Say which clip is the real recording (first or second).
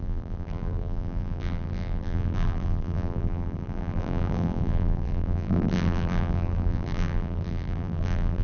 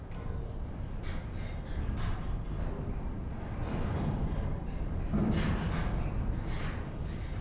second